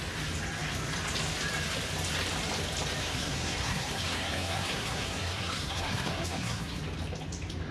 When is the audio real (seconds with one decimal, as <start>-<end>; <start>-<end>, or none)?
0.0-3.0; 6.8-7.7